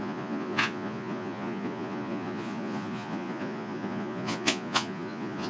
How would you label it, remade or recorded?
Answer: remade